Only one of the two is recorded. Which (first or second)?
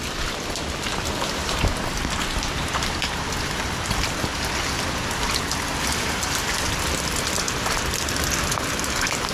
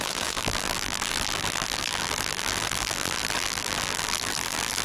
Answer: first